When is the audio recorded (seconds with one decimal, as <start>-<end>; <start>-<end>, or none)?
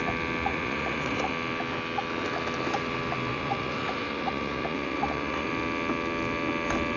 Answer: 0.0-0.5; 1.3-3.3; 5.5-7.0